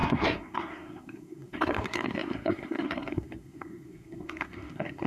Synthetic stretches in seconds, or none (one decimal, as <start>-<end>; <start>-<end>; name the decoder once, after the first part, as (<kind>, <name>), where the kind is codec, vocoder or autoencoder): 0.0-5.1 (codec, SNAC)